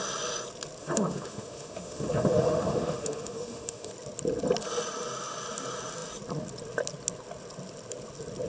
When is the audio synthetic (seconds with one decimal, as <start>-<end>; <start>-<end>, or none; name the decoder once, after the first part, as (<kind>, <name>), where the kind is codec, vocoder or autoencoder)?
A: 0.8-3.9 (autoencoder, DAC-VAE)